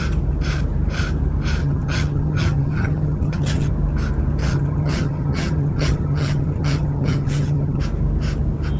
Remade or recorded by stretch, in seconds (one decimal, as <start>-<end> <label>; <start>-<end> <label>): 0.0-1.6 recorded; 1.6-3.7 remade; 3.7-4.4 recorded; 4.4-7.8 remade; 7.8-8.8 recorded